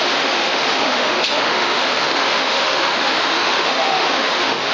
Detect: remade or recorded remade